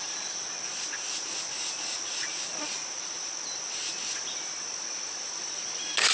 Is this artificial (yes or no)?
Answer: no